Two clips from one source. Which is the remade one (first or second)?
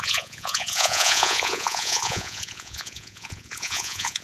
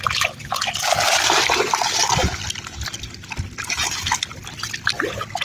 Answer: first